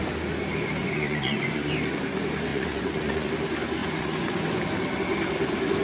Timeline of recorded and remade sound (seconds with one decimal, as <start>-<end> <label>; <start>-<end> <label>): 0.0-0.8 recorded; 0.8-1.7 remade; 1.7-2.5 recorded; 2.5-3.3 remade; 3.3-3.8 recorded; 3.8-4.6 remade; 4.6-5.8 recorded